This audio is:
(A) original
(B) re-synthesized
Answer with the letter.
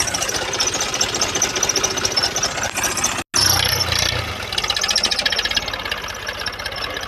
A